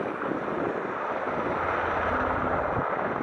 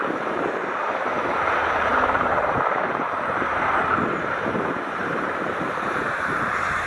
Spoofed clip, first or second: second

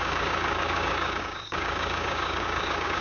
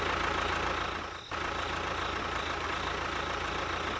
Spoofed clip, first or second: first